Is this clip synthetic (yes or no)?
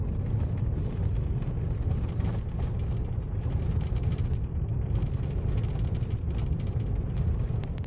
no